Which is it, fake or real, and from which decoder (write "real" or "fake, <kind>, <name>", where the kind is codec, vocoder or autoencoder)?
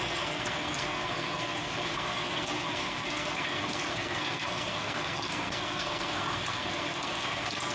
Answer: fake, codec, SNAC